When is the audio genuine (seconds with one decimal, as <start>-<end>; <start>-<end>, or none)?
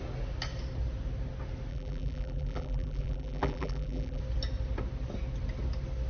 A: 0.0-1.7; 4.2-6.1